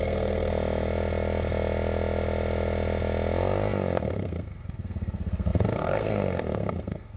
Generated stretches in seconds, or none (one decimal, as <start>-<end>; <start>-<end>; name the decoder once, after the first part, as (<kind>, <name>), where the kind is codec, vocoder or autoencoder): 0.0-0.5 (codec, SNAC); 4.0-7.2